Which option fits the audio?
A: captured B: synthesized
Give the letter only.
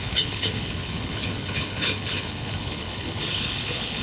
B